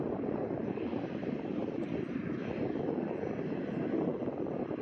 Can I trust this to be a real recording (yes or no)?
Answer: yes